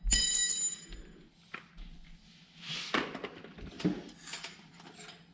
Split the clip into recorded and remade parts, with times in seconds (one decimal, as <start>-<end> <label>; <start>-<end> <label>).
0.0-5.3 recorded